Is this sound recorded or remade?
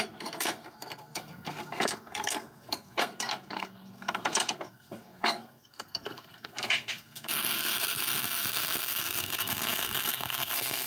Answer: remade